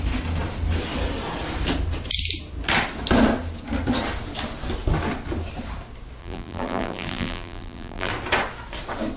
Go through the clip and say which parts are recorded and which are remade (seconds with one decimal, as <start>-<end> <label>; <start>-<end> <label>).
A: 0.0-6.2 recorded; 6.2-8.1 remade; 8.1-9.2 recorded

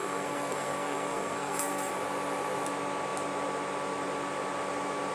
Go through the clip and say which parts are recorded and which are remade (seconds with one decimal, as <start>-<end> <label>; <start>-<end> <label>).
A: 0.0-1.9 remade; 1.9-5.1 recorded

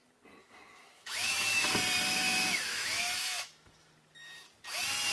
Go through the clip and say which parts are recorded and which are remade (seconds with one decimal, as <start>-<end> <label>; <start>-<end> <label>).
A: 0.0-0.4 recorded; 0.4-1.7 remade; 1.7-2.1 recorded; 2.1-3.9 remade; 3.9-5.1 recorded

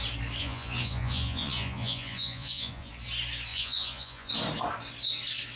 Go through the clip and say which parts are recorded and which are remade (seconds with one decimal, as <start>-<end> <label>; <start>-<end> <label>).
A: 0.0-0.4 recorded; 0.4-2.9 remade; 2.9-3.5 recorded; 3.5-4.3 remade; 4.3-5.6 recorded

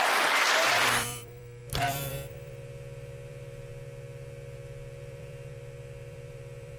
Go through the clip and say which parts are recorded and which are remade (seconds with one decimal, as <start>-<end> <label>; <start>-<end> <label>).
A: 0.0-3.7 remade; 3.7-5.0 recorded; 5.0-6.8 remade

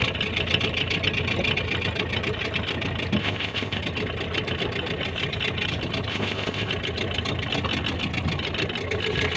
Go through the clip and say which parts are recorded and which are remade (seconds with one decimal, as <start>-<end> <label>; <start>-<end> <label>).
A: 0.0-3.2 recorded; 3.2-3.8 remade; 3.8-6.1 recorded; 6.1-6.7 remade; 6.7-9.4 recorded

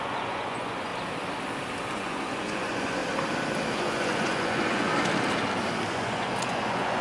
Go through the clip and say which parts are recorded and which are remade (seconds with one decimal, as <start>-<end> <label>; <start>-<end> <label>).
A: 0.0-0.9 remade; 0.9-1.9 recorded; 1.9-3.0 remade; 3.0-3.7 recorded; 3.7-4.9 remade; 4.9-5.9 recorded; 5.9-7.0 remade

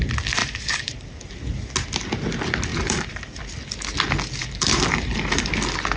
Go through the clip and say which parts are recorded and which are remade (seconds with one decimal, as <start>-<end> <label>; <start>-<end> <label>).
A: 0.0-0.4 recorded; 0.4-1.2 remade; 1.2-2.7 recorded; 2.7-3.4 remade; 3.4-4.4 recorded; 4.4-5.5 remade; 5.5-6.0 recorded